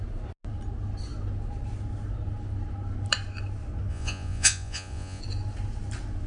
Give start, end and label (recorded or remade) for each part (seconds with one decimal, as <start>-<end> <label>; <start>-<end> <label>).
0.0-3.9 recorded; 3.9-5.2 remade; 5.2-6.3 recorded